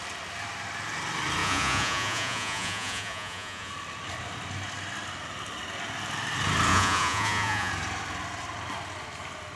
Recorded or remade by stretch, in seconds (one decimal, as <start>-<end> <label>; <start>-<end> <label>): 0.0-1.4 recorded; 1.4-3.7 remade; 3.7-6.7 recorded; 6.7-7.7 remade; 7.7-9.6 recorded